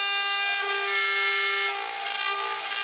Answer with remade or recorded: recorded